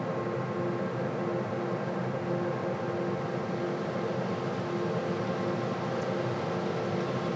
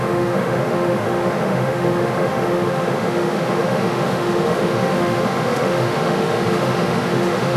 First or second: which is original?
first